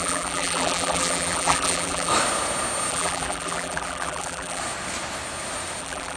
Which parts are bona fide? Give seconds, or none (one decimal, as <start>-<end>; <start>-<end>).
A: 2.1-2.9; 4.6-5.8